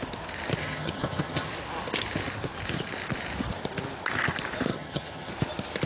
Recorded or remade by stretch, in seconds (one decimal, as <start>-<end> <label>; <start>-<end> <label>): 0.0-0.6 recorded; 0.6-1.5 remade; 1.5-4.7 recorded; 4.7-5.3 remade; 5.3-5.9 recorded